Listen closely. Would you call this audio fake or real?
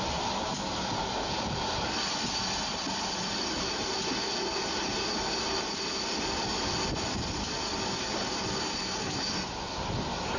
real